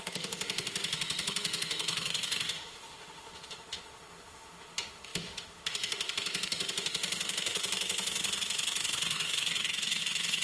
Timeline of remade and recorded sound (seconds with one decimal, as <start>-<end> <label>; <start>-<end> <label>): 0.0-10.4 remade